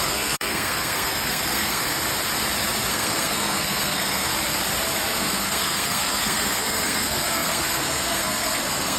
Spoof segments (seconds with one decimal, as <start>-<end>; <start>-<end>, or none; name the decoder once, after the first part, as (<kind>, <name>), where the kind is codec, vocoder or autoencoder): 0.0-1.8 (codec, SNAC); 2.9-4.3; 5.0-9.0